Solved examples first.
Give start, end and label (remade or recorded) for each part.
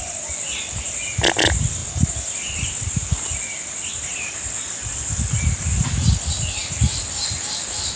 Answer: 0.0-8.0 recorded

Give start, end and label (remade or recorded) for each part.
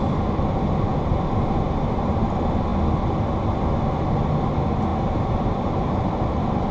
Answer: 0.0-6.7 recorded